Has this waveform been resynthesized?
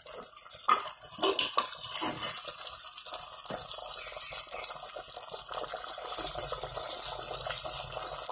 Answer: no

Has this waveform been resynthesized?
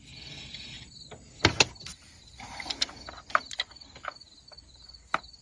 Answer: no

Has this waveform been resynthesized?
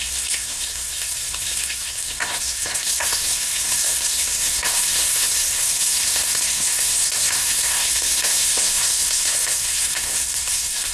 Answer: yes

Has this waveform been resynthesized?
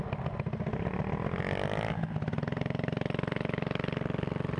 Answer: no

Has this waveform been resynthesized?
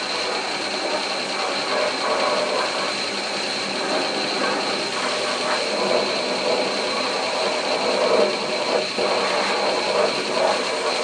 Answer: no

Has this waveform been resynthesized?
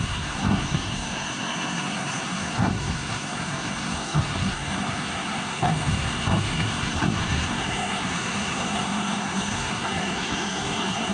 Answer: yes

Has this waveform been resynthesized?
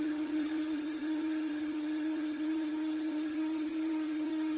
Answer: yes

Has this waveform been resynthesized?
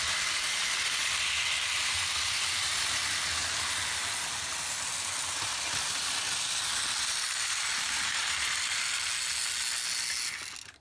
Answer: no